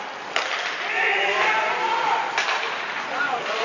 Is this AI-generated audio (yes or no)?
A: no